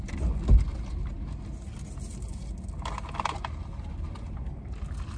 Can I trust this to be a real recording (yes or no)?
yes